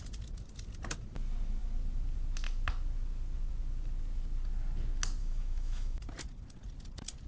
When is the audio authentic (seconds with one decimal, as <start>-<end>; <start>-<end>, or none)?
0.0-5.2; 6.0-7.3